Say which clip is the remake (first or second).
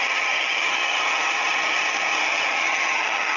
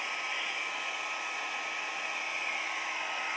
first